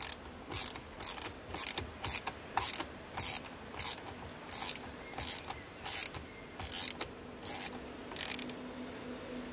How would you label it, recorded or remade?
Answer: recorded